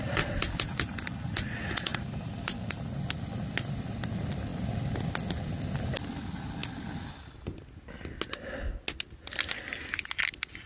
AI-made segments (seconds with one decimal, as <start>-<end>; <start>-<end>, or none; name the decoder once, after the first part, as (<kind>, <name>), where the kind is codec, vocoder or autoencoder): none